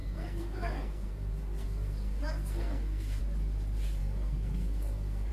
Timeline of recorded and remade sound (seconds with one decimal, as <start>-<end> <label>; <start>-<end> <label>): 0.0-3.2 remade; 3.2-4.0 recorded; 4.0-5.3 remade